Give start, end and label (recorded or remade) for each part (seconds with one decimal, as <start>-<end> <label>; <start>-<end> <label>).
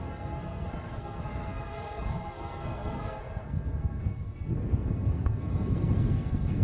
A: 0.0-6.6 remade